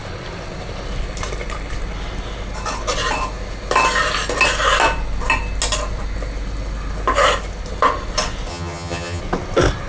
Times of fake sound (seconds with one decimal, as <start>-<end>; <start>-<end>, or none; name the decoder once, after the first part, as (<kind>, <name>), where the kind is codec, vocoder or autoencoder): 8.5-9.2 (vocoder, HiFi-GAN)